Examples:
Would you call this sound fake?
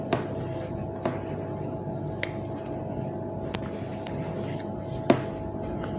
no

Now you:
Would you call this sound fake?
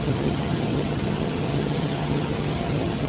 yes